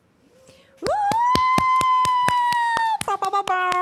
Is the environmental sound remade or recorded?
recorded